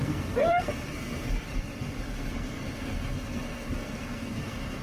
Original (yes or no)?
no